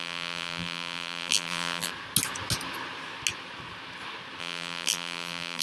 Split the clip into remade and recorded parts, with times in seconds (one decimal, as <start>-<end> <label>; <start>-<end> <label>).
0.0-1.9 remade; 1.9-4.4 recorded; 4.4-5.6 remade